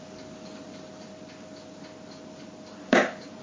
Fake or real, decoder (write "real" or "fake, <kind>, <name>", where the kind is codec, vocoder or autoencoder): real